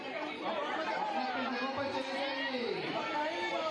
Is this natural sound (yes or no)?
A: yes